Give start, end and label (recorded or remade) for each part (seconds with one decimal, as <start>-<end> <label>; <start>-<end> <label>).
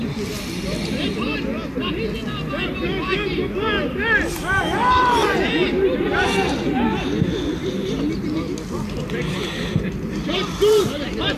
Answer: 0.0-11.4 recorded